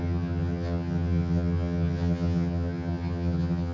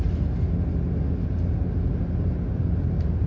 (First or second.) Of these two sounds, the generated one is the first